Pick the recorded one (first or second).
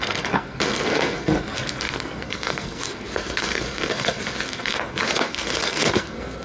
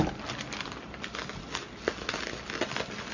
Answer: second